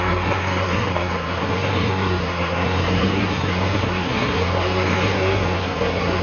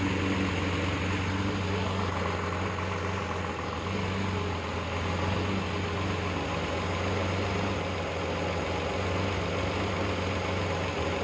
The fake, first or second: first